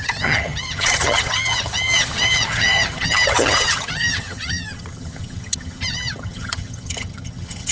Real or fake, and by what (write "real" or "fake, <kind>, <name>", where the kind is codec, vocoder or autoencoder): fake, vocoder, HiFi-GAN